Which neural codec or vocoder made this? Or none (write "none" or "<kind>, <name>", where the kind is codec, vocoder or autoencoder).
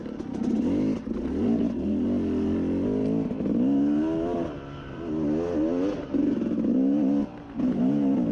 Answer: none